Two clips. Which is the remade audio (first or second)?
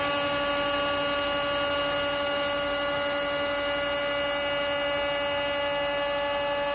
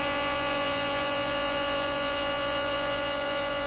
second